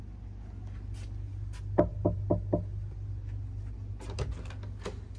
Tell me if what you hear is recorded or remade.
recorded